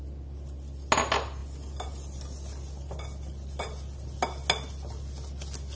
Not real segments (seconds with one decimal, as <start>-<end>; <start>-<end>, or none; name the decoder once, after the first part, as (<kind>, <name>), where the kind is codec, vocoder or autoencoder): none